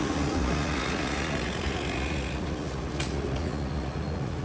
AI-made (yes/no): yes